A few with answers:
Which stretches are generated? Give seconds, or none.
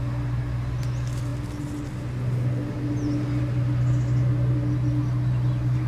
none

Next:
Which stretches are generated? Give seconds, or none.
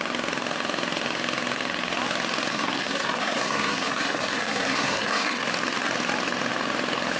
2.5-5.5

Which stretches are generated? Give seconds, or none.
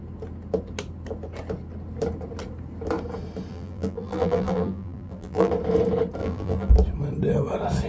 3.5-5.5; 6.2-6.7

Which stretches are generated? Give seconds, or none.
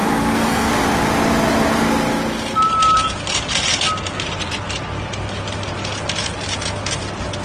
0.0-0.7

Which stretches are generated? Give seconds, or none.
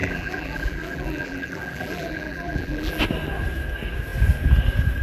0.0-3.0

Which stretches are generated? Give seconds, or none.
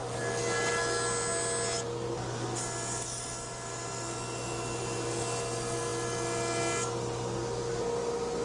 none